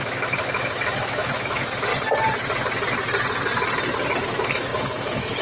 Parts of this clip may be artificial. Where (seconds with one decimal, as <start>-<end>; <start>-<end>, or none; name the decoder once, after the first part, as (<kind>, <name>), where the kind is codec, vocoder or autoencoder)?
0.0-1.9 (autoencoder, DAC-VAE); 4.2-5.4